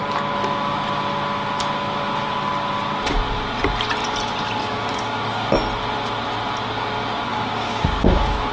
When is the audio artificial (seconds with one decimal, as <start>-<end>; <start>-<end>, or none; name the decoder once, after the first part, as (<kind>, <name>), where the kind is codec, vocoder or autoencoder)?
4.6-5.5 (codec, DAC); 7.3-8.5